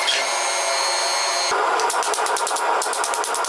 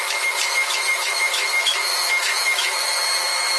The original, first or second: first